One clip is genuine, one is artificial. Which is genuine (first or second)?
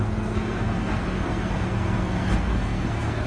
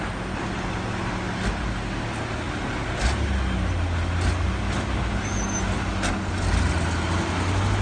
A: second